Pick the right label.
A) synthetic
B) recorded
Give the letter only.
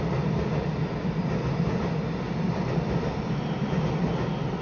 B